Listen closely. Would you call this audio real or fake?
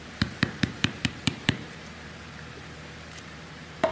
fake